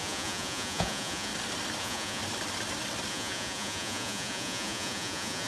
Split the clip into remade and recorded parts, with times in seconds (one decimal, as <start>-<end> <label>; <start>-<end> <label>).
0.0-1.3 remade; 1.3-1.8 recorded; 1.8-2.2 remade; 2.2-3.1 recorded; 3.1-5.5 remade